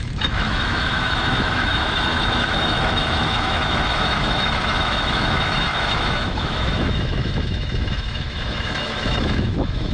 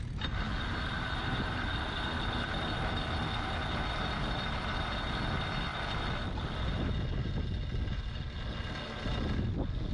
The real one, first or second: second